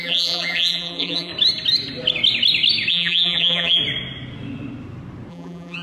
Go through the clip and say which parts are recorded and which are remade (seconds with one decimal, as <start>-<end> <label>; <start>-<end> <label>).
0.0-1.3 remade; 1.3-2.9 recorded; 2.9-3.8 remade; 3.8-5.3 recorded; 5.3-5.8 remade